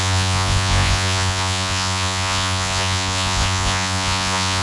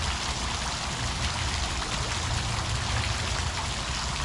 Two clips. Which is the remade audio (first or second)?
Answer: first